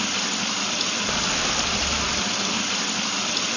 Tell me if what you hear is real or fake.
real